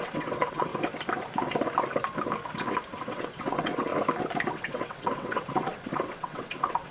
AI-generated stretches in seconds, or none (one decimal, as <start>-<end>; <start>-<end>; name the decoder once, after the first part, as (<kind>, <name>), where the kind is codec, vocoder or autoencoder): 0.0-0.7 (vocoder, WaveNeXt); 3.1-3.9; 4.5-6.9